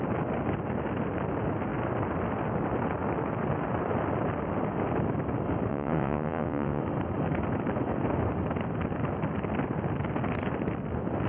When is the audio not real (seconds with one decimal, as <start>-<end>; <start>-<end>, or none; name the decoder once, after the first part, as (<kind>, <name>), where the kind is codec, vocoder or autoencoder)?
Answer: 5.7-6.8 (vocoder, WaveNeXt)